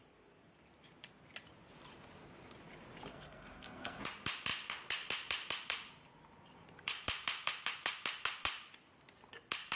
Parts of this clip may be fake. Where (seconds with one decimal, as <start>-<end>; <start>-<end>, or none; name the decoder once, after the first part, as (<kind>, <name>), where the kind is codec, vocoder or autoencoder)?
3.1-4.0 (codec, SNAC)